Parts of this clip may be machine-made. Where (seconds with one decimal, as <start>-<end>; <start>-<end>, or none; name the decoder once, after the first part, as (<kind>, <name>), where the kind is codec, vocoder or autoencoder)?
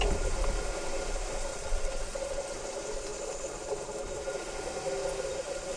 1.5-2.4 (vocoder, WaveNeXt)